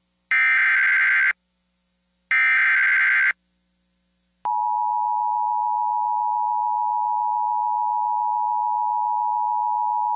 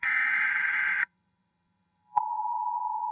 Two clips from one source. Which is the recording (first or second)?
first